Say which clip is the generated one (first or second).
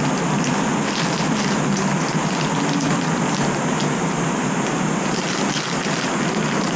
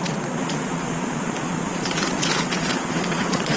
second